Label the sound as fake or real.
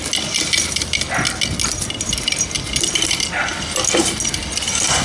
real